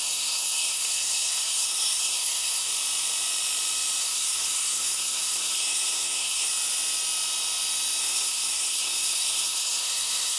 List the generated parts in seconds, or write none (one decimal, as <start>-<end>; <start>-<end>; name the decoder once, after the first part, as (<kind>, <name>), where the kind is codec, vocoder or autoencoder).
0.0-2.7 (codec, SNAC); 4.0-6.5; 8.0-10.4

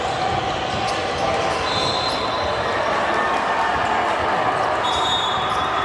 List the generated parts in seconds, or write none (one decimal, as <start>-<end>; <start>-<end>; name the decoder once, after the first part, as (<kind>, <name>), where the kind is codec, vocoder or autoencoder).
none